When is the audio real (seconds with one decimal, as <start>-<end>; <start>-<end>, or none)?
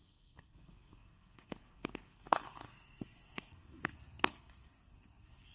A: none